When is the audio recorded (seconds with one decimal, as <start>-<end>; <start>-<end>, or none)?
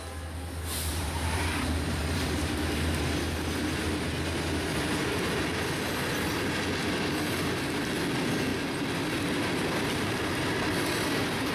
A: 0.0-0.9; 2.5-11.5